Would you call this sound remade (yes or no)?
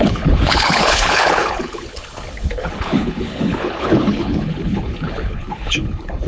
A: yes